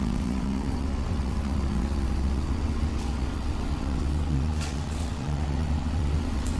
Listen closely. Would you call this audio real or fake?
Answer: fake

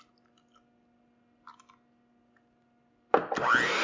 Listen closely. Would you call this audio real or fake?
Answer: real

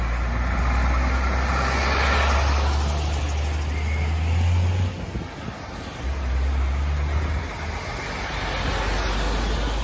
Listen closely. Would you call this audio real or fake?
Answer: real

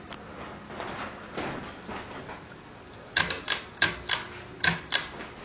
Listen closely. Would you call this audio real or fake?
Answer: real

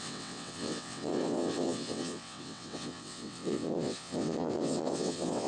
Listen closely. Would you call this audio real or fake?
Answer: fake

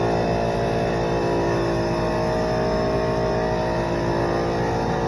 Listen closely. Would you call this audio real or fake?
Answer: real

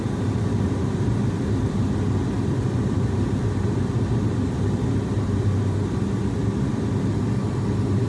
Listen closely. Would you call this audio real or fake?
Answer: real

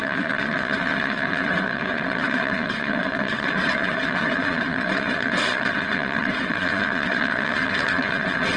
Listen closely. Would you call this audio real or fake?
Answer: fake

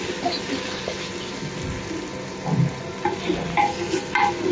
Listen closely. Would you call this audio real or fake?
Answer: real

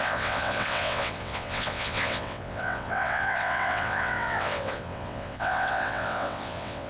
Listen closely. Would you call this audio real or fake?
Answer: fake